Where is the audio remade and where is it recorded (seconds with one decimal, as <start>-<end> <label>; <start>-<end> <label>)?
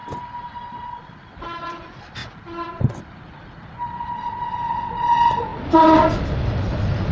0.0-7.1 recorded